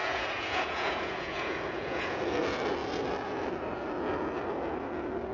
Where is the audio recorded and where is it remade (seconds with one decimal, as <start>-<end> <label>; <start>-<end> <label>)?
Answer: 0.0-2.2 remade; 2.2-5.3 recorded